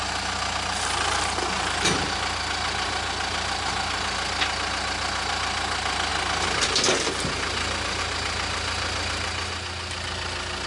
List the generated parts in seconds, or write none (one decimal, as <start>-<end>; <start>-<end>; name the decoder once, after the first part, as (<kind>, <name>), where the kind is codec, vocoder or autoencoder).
none